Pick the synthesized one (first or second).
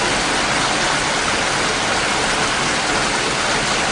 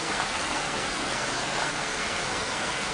second